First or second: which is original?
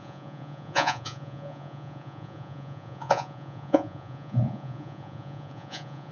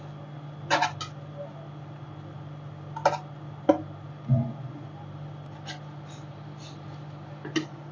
second